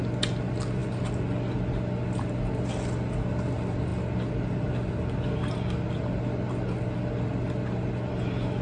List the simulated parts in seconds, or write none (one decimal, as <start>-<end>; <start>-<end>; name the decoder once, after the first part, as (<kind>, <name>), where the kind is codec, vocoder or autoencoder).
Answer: none